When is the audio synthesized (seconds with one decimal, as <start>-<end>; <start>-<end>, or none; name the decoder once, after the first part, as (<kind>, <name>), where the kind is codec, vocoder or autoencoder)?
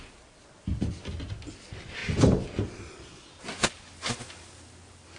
none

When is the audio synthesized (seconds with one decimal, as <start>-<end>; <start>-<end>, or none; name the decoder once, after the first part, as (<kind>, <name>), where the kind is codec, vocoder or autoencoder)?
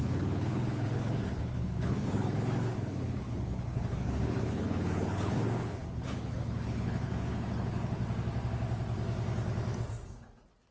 0.0-8.0 (codec, HILCodec)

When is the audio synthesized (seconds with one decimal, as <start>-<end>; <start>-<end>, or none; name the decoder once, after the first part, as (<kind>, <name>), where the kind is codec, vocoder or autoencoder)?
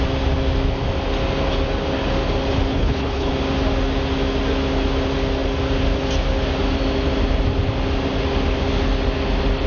2.7-3.3 (codec, HILCodec)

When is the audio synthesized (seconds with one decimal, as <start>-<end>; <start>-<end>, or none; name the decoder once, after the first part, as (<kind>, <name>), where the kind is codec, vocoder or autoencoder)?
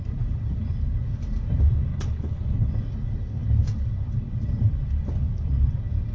1.9-2.7 (codec, HILCodec)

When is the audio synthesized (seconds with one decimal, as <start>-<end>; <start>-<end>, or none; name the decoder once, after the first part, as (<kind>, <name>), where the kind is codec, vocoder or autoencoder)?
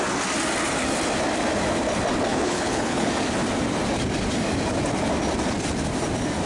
2.3-3.1 (codec, HILCodec)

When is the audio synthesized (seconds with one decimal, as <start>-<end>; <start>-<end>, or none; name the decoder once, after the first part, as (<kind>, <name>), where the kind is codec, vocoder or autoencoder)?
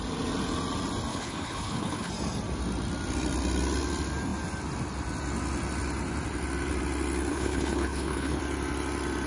1.1-2.1 (codec, HILCodec); 7.3-8.4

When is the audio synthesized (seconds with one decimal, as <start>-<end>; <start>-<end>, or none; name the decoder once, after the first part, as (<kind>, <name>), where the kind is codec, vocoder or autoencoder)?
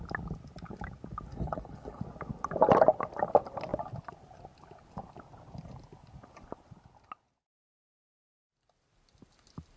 1.3-2.0 (codec, HILCodec)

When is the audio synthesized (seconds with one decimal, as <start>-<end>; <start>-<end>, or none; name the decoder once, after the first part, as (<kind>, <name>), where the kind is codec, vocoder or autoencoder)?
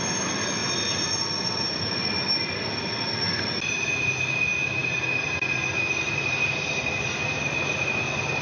none